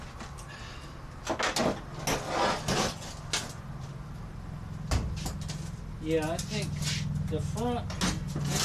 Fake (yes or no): no